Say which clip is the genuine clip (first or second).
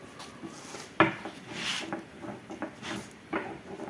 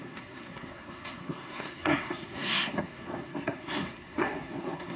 first